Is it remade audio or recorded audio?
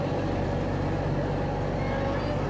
recorded